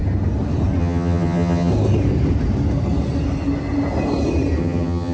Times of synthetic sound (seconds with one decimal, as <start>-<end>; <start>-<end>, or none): 0.8-1.7; 4.6-5.1